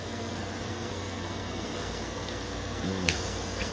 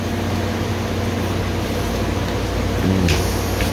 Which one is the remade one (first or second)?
first